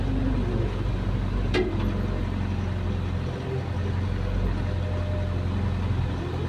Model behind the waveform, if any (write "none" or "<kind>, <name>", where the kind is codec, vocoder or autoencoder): none